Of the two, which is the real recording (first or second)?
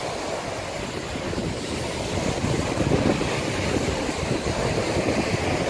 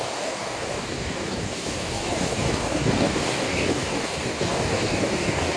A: first